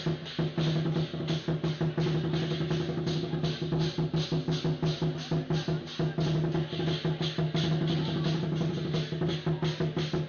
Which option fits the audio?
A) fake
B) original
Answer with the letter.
B